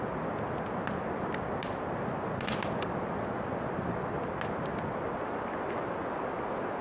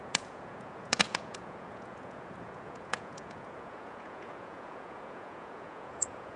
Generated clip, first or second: second